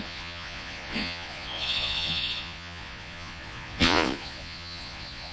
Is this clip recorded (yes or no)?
no